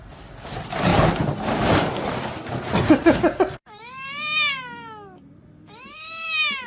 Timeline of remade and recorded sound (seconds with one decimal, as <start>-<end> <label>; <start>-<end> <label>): 0.0-0.9 recorded; 0.9-2.5 remade; 2.5-6.7 recorded